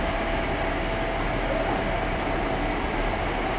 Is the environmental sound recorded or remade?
recorded